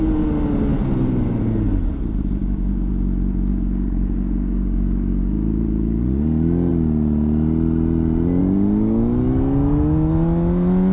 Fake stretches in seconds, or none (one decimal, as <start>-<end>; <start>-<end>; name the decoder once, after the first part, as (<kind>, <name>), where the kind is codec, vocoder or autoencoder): 2.4-2.9 (codec, DAC); 3.5-5.2